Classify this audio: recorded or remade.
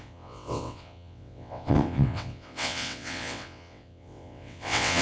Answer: remade